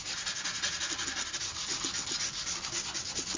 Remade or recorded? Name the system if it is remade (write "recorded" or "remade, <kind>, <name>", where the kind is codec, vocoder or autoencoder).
recorded